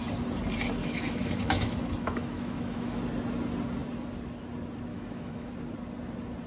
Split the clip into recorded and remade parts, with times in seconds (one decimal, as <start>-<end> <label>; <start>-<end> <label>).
0.0-0.8 recorded; 0.8-3.0 remade; 3.0-4.9 recorded; 4.9-5.5 remade; 5.5-6.5 recorded